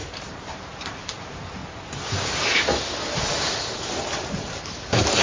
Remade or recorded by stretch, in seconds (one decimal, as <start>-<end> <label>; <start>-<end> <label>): 0.0-1.6 remade; 1.6-4.3 recorded; 4.3-5.2 remade

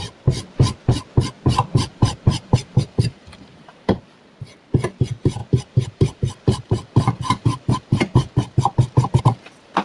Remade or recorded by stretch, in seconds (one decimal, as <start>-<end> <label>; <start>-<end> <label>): 0.0-1.9 recorded; 1.9-4.0 remade; 4.0-5.4 recorded; 5.4-9.2 remade; 9.2-9.8 recorded